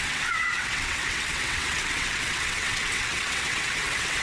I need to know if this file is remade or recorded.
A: remade